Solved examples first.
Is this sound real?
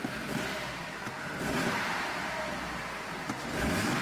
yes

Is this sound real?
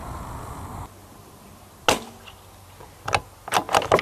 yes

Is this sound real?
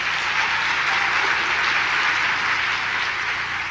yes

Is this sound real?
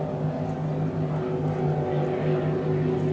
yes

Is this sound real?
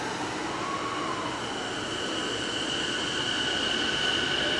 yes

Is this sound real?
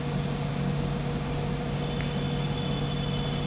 yes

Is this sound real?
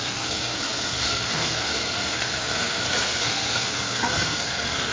no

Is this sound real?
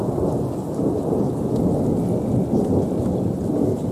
yes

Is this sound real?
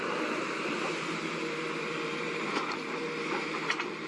no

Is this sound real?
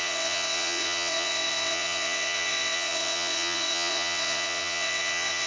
no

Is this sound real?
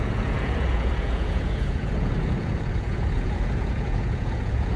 no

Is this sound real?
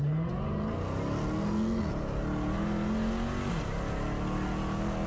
yes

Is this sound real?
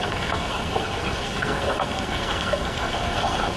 no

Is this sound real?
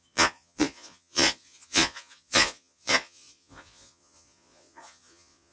no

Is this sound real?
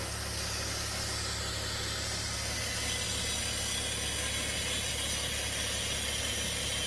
yes